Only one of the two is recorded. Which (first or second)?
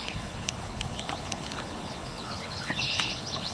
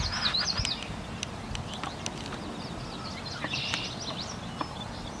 second